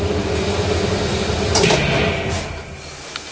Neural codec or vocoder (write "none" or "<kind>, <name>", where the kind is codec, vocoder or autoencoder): none